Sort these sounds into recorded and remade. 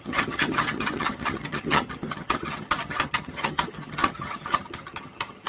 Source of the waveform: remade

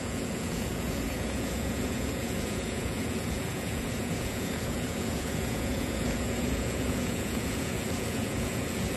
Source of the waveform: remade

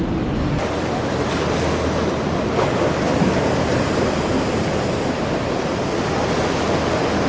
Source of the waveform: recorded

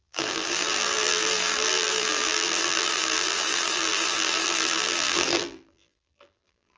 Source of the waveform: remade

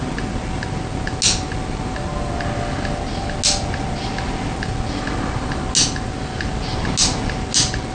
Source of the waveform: recorded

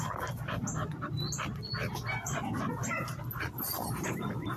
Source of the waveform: recorded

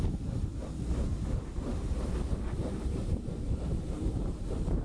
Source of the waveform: remade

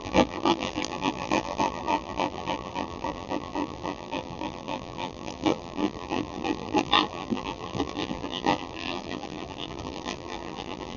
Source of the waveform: remade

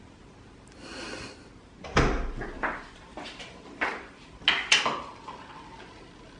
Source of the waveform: recorded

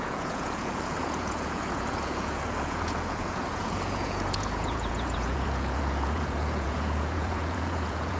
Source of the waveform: remade